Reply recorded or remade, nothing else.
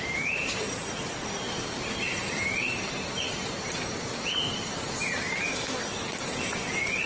recorded